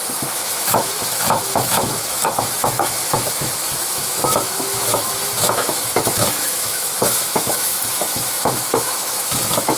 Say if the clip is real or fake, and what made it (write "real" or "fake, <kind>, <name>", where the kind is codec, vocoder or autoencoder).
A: fake, autoencoder, DAC-VAE